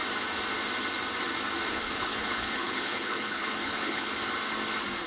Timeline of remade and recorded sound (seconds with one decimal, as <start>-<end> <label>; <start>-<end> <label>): 0.0-1.7 recorded; 1.7-4.1 remade; 4.1-5.1 recorded